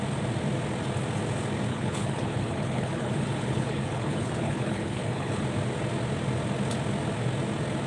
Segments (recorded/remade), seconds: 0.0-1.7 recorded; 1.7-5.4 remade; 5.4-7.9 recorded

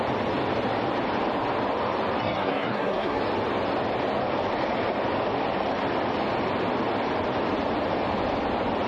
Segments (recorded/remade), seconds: 0.0-2.2 recorded; 2.2-3.2 remade; 3.2-8.9 recorded

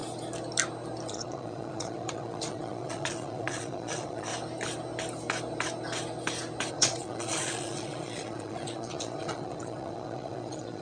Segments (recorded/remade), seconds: 0.0-1.1 recorded; 1.1-4.3 remade; 4.3-6.7 recorded; 6.7-10.8 remade

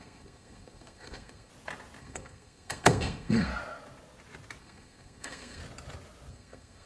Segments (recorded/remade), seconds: 0.0-1.5 remade; 1.5-2.0 recorded; 2.0-3.5 remade; 3.5-4.6 recorded; 4.6-5.6 remade; 5.6-6.3 recorded; 6.3-6.9 remade

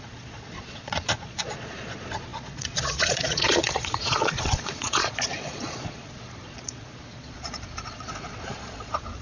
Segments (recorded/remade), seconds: 0.0-9.2 remade

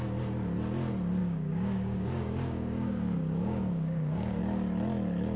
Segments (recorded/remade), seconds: 0.0-1.2 recorded; 1.2-4.4 remade; 4.4-5.4 recorded